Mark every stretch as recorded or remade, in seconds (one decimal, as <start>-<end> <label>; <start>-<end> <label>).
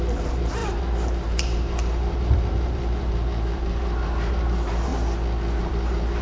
0.0-4.9 remade; 4.9-5.6 recorded; 5.6-6.2 remade